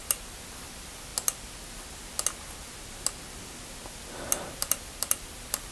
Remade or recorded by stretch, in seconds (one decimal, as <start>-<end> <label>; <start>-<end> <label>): 0.0-1.1 remade; 1.1-4.5 recorded; 4.5-5.7 remade